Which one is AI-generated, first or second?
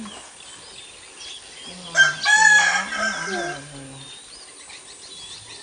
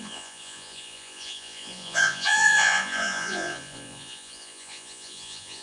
second